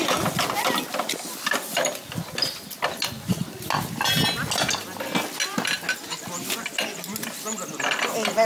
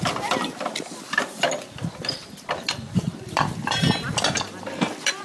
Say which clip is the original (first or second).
first